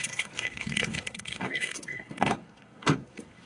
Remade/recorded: remade